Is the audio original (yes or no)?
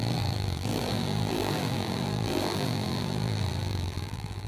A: no